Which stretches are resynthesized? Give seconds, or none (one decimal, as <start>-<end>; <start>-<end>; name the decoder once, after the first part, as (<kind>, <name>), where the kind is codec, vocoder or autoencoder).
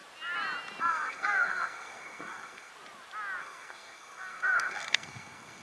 0.8-2.7 (codec, SNAC); 3.4-5.6